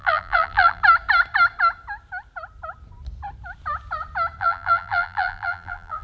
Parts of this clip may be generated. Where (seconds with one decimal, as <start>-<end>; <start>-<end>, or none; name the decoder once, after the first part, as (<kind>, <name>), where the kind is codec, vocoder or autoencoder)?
0.0-0.8 (vocoder, BigVGAN v2); 4.4-6.0